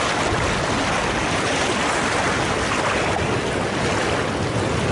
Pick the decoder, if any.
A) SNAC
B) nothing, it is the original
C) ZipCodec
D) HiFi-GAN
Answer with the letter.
B